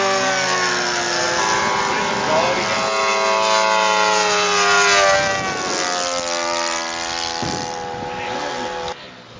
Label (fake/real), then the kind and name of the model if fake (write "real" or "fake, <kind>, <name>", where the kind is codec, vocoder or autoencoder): real